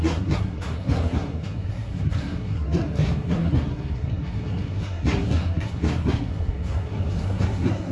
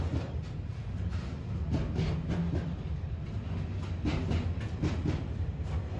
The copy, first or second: first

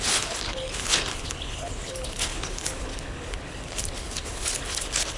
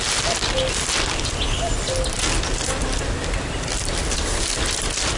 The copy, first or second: first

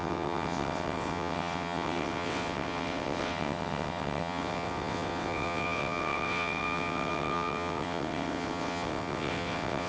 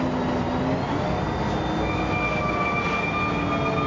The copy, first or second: first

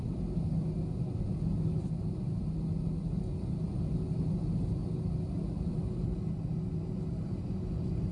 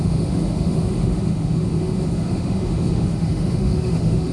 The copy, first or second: second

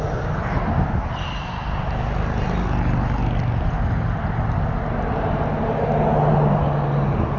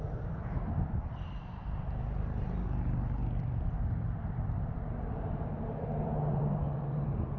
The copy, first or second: second